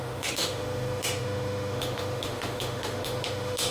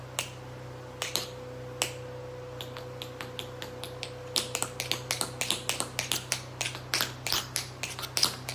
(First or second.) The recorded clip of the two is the second